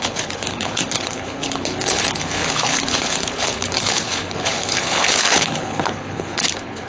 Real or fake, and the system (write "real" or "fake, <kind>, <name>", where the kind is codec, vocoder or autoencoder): fake, codec, HILCodec